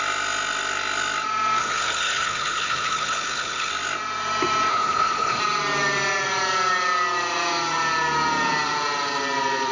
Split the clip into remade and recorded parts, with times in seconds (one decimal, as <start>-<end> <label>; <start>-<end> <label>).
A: 0.0-1.6 recorded; 1.6-3.7 remade; 3.7-4.7 recorded; 4.7-5.4 remade; 5.4-9.7 recorded